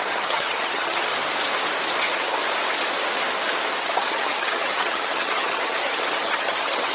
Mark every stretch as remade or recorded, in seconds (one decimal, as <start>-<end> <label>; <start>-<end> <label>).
0.0-1.1 remade; 1.1-2.0 recorded; 2.0-2.4 remade; 2.4-3.8 recorded; 3.8-6.9 remade